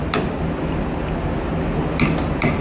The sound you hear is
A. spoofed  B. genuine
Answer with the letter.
B